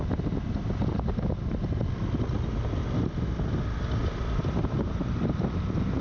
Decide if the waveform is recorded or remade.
recorded